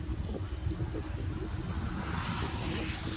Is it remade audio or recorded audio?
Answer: recorded